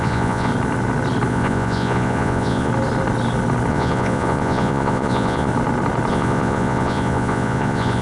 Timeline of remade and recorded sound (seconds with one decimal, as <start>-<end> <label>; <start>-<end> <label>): 0.0-0.5 remade; 0.5-1.3 recorded; 1.3-2.7 remade; 2.7-3.7 recorded; 3.7-5.5 remade; 5.5-6.1 recorded; 6.1-8.0 remade